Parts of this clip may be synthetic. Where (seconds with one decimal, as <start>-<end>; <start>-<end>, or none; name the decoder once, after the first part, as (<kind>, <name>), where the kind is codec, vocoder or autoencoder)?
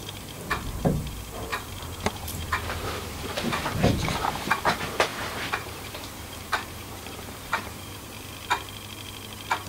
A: 1.5-4.5 (vocoder, BigVGAN v2); 5.1-8.0